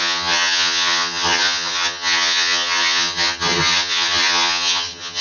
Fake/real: fake